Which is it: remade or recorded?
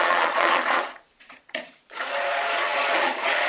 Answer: remade